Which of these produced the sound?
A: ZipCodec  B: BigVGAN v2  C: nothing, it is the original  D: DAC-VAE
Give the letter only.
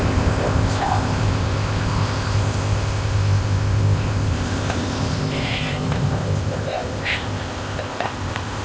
A